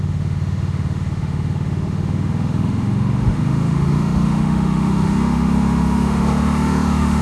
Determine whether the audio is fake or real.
fake